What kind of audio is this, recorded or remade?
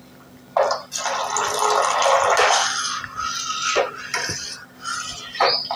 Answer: recorded